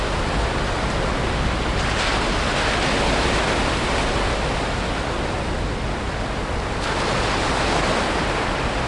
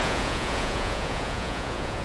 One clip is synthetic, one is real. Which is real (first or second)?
first